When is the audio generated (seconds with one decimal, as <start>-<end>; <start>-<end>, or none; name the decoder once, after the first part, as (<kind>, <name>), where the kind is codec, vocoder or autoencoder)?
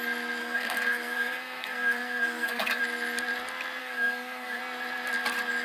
0.4-2.8 (codec, SNAC); 3.8-4.6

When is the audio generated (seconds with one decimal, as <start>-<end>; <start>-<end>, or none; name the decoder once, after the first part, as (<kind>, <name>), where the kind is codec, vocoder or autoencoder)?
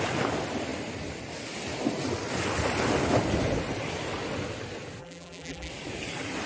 5.0-5.7 (vocoder, BigVGAN v2)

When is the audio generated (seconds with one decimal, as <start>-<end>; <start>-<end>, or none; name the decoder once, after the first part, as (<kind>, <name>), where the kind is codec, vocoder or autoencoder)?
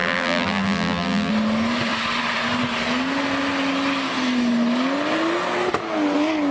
0.0-1.3 (vocoder, BigVGAN v2)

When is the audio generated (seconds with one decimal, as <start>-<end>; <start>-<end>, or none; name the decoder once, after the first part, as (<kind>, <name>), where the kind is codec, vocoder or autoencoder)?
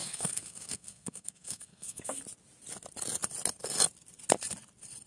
0.0-2.2 (codec, SNAC)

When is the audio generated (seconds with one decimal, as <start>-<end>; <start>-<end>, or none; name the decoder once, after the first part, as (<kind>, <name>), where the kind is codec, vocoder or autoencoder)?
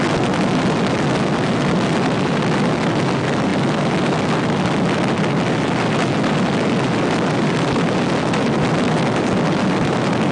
none